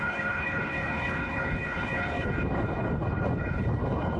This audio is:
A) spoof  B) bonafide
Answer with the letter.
A